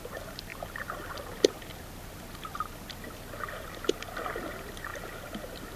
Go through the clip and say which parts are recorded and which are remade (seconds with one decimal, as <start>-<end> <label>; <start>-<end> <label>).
0.0-5.8 recorded